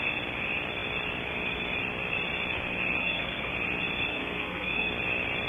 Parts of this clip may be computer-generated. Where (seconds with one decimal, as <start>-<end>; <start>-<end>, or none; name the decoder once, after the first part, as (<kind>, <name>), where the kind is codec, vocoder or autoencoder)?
3.0-3.5 (codec, SNAC); 4.1-4.9